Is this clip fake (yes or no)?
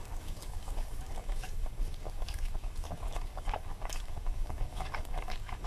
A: yes